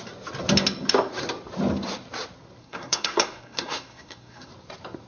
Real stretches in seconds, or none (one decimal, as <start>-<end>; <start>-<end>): 0.0-2.6; 4.5-5.1